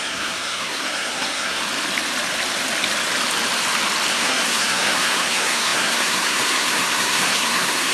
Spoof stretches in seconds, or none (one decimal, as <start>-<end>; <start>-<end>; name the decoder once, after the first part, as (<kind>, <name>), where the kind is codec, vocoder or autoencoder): 0.0-1.6 (codec, SNAC); 4.1-7.9